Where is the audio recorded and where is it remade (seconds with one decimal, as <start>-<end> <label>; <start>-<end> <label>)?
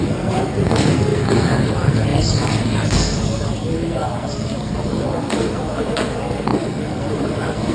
0.0-7.7 remade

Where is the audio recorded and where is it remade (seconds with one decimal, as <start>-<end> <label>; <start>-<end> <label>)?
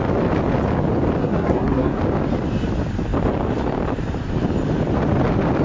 0.0-1.2 recorded; 1.2-2.0 remade; 2.0-5.6 recorded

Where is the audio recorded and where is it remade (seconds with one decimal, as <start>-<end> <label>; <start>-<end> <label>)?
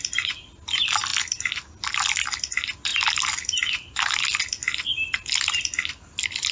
0.0-6.5 recorded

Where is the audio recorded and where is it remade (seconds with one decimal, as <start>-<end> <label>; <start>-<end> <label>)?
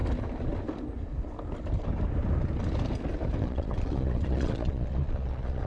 0.0-3.4 recorded; 3.4-5.7 remade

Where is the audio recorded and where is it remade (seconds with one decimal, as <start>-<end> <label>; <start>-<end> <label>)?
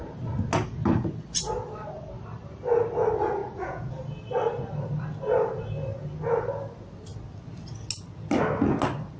0.0-3.4 recorded; 3.4-3.9 remade; 3.9-9.2 recorded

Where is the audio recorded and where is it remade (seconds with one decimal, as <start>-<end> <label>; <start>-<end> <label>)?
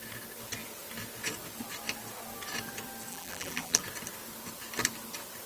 0.0-3.1 recorded; 3.1-3.8 remade; 3.8-5.5 recorded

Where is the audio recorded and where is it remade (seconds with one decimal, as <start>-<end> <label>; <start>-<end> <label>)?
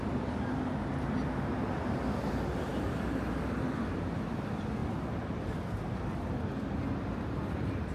0.0-7.9 recorded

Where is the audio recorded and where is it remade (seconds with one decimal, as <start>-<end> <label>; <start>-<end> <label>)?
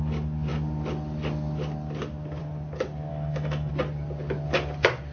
0.0-3.1 recorded; 3.1-3.7 remade; 3.7-5.1 recorded